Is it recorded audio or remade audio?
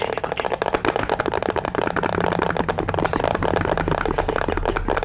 recorded